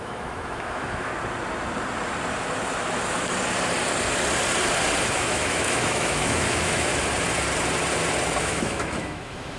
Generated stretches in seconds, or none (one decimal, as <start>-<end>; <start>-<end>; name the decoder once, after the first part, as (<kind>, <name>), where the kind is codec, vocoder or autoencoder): 0.0-1.1 (autoencoder, DAC-VAE); 5.0-6.9; 8.4-9.6